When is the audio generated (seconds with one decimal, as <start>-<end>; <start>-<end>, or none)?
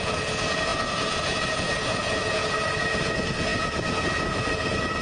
0.0-5.0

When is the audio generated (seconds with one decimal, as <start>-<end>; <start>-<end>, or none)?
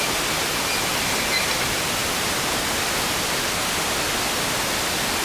none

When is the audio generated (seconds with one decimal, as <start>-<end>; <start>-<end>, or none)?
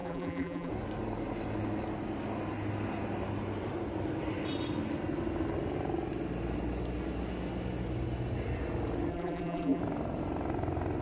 0.0-0.7; 9.1-9.8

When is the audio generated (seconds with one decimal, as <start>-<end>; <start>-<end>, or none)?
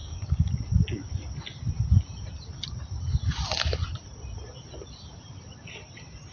0.0-0.5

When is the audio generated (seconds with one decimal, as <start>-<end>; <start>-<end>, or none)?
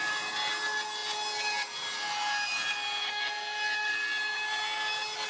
none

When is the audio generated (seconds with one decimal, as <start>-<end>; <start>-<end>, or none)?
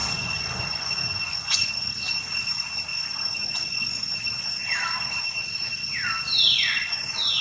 0.0-1.7; 2.9-4.1; 6.5-7.4